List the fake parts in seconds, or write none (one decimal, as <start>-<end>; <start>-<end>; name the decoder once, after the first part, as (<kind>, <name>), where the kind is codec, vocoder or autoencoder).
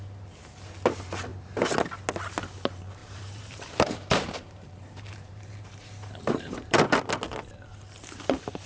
3.0-7.0 (vocoder, BigVGAN v2)